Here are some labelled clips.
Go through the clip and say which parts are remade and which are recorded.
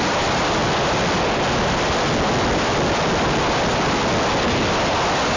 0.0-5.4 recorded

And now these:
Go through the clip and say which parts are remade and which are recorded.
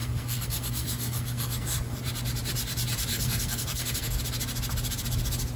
0.0-2.0 remade; 2.0-3.1 recorded; 3.1-4.2 remade; 4.2-5.6 recorded